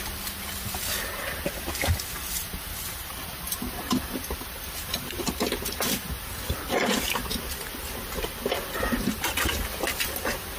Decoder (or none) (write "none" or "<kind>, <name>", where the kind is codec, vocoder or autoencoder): none